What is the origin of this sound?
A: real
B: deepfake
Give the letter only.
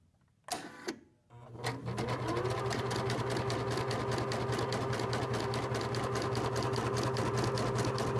A